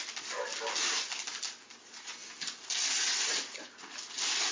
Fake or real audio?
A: real